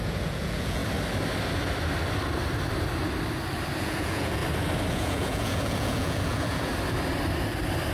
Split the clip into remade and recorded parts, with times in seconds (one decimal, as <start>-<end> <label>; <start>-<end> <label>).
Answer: 0.0-0.8 remade; 0.8-3.8 recorded; 3.8-4.4 remade; 4.4-4.9 recorded; 4.9-6.7 remade; 6.7-7.9 recorded